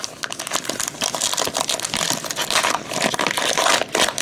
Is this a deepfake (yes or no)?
no